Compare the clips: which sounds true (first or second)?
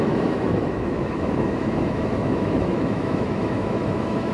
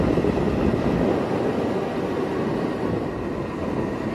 second